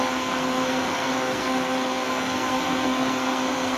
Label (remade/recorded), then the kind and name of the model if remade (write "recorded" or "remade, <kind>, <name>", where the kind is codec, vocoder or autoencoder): remade, codec, SNAC